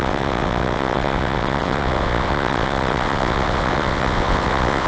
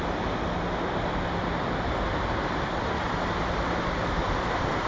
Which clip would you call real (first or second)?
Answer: second